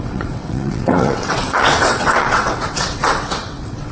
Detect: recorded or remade remade